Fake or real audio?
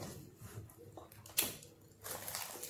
real